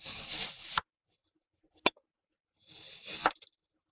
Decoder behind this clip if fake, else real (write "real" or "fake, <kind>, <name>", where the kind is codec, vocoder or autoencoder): real